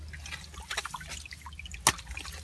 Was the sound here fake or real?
real